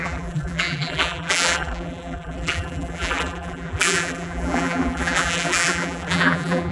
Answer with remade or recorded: remade